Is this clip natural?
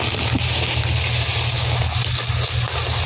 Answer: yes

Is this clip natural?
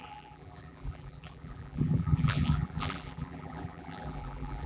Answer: no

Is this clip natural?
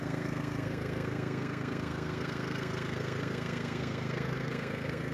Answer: no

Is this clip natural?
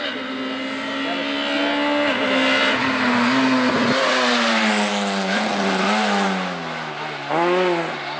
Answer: yes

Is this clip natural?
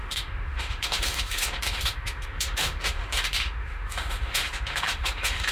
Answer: no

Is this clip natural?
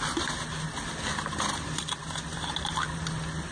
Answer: yes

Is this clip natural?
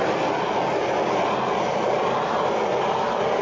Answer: yes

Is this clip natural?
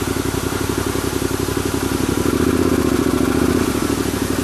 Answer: no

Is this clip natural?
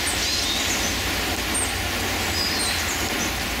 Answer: yes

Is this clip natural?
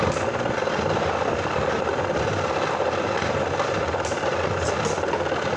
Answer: yes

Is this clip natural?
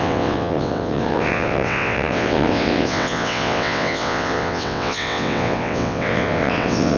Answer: no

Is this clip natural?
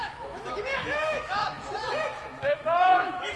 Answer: no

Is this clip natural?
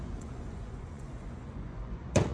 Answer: no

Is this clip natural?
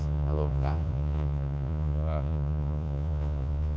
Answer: no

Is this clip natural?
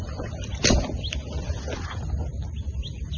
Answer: yes